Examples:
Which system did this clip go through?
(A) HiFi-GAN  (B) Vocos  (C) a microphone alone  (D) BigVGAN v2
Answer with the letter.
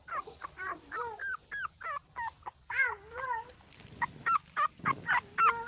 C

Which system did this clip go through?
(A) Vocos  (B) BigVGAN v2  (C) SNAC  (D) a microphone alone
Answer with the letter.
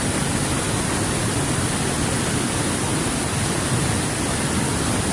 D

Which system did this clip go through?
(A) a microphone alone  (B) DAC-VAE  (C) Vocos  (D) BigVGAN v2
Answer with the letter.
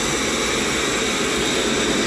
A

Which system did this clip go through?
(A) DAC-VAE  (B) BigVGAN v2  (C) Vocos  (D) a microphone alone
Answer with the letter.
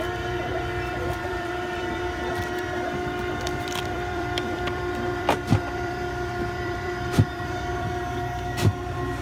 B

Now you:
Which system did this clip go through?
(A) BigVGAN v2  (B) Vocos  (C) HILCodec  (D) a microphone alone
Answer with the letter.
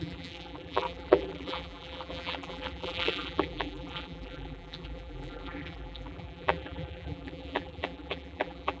A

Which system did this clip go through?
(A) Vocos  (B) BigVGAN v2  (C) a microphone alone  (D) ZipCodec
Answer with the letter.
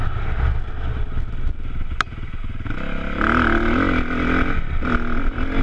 C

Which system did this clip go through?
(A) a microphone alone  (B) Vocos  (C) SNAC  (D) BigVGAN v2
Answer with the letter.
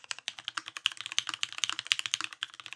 A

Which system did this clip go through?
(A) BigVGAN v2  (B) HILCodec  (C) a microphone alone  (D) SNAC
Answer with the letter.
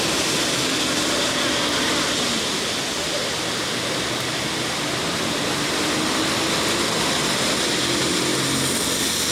C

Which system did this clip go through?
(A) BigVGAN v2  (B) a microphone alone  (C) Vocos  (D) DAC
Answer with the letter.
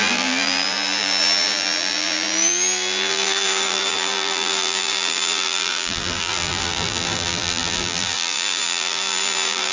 A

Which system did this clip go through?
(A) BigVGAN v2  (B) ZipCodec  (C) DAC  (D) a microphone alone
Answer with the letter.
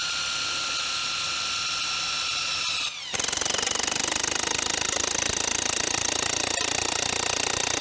D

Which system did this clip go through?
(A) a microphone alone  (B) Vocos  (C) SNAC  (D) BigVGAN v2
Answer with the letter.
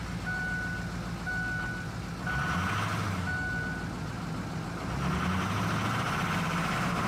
A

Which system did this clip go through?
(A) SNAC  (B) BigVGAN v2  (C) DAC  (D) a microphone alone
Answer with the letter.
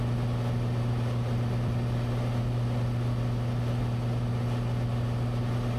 D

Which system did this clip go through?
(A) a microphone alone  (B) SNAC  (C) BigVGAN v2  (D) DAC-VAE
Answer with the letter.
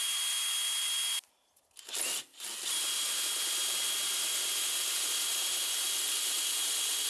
A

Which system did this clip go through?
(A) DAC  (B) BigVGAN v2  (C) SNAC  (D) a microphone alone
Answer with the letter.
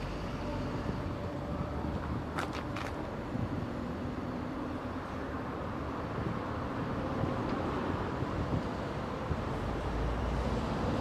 B